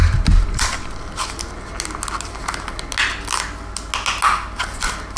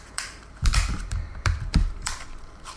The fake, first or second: second